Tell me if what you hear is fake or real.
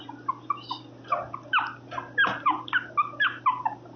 real